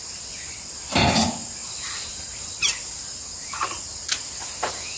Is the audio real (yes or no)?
yes